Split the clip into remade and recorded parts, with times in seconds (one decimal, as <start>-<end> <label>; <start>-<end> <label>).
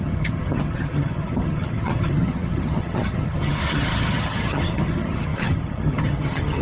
0.0-6.6 remade